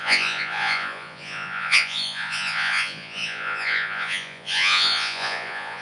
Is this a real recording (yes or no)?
no